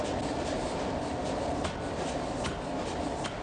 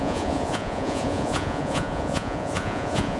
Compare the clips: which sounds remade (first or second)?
second